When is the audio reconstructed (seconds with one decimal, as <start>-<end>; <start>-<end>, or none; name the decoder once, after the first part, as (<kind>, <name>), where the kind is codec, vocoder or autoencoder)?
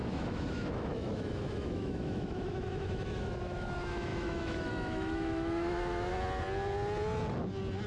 0.0-6.1 (autoencoder, DAC-VAE)